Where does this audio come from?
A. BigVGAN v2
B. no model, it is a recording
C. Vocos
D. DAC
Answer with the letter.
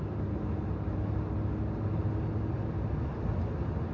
B